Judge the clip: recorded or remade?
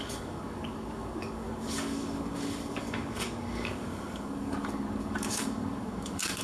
remade